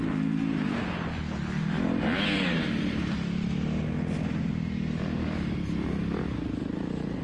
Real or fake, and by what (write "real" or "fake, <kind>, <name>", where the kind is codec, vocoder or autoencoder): real